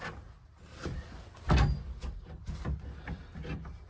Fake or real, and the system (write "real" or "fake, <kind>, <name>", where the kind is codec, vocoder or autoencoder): real